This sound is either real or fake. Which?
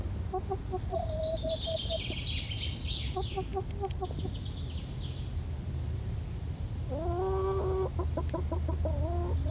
real